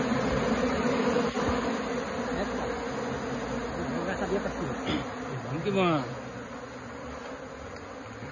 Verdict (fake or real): real